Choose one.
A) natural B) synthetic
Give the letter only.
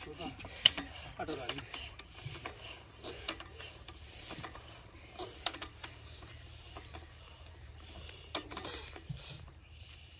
B